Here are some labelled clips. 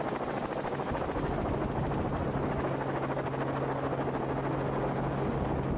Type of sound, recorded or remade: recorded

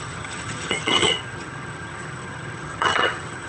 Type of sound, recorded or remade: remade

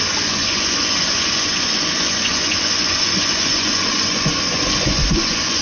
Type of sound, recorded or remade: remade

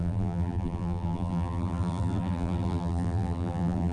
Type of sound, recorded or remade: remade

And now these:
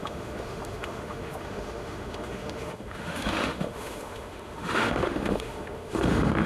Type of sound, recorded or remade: remade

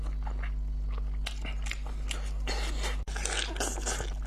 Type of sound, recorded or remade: recorded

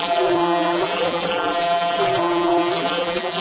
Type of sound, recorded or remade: remade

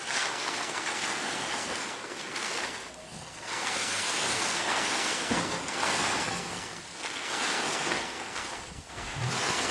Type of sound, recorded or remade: remade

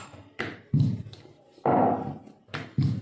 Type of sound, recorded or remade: remade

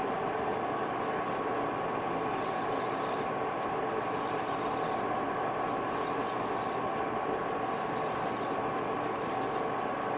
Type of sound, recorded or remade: recorded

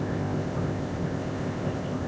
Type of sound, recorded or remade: remade